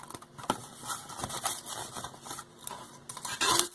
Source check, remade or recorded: recorded